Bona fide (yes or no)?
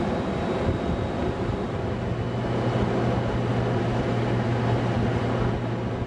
yes